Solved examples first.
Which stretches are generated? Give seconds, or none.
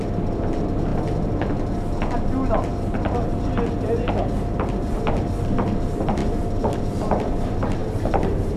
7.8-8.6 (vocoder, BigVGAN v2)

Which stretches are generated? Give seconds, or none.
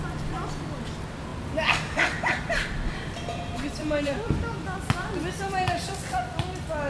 1.3-5.4 (vocoder, BigVGAN v2)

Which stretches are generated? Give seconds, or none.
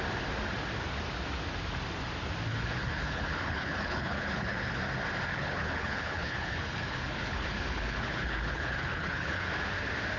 2.5-4.8 (codec, HILCodec); 5.3-9.5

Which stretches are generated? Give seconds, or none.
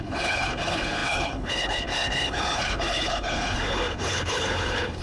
0.0-5.0 (codec, HILCodec)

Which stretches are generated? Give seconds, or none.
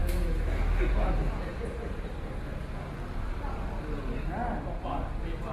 0.0-0.9 (autoencoder, DAC-VAE)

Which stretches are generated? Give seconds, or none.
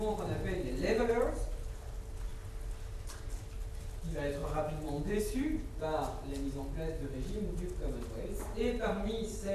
4.4-5.2 (vocoder, Vocos)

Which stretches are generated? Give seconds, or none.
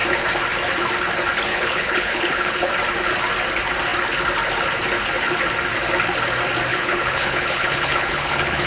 1.5-2.7 (codec, HILCodec); 6.7-8.7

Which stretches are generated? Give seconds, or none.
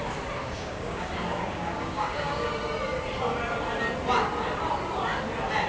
0.4-2.5 (codec, DAC)